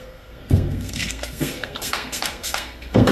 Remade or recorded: remade